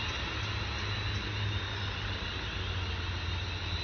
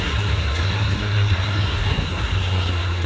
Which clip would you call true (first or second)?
first